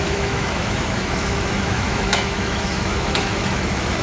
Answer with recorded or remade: remade